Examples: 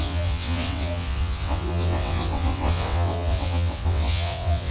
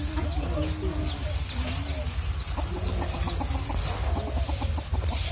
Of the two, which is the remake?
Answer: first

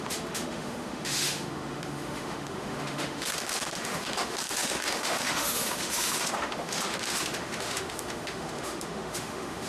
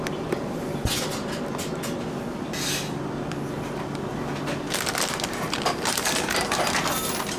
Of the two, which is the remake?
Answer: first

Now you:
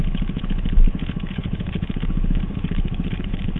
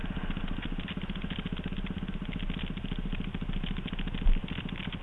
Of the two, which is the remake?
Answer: first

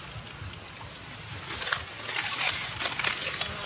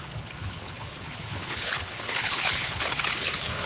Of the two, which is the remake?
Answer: second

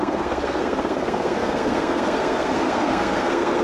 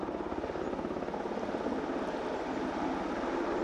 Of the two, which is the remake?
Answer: first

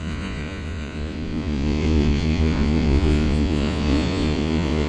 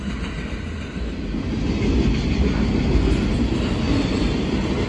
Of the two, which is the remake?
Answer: first